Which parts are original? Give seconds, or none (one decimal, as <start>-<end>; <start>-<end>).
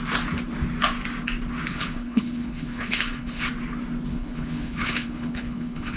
0.0-1.7; 3.5-4.1